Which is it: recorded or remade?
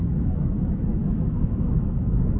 remade